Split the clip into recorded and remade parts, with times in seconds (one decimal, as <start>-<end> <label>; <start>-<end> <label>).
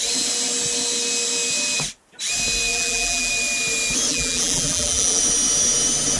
0.0-2.7 recorded; 2.7-3.3 remade; 3.3-4.1 recorded; 4.1-5.2 remade; 5.2-6.2 recorded